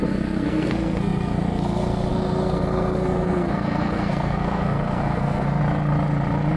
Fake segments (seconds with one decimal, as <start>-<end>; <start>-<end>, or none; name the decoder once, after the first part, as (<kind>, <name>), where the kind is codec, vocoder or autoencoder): 0.0-5.6 (codec, SNAC)